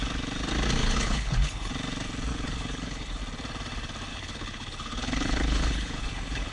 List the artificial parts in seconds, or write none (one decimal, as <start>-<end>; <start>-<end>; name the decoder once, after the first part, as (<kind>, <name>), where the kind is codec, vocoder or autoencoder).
0.8-1.7 (codec, HILCodec); 2.3-3.2; 4.1-6.5